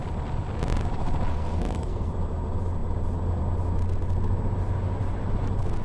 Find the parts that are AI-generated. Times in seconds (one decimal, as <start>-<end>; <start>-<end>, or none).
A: 1.3-2.1